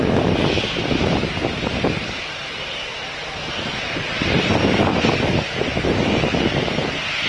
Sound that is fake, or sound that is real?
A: real